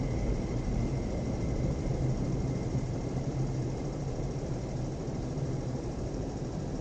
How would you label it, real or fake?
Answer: fake